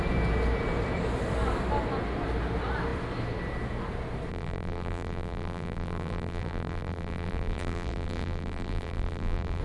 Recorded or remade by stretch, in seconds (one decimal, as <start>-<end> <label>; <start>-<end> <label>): 0.0-4.3 recorded; 4.3-9.6 remade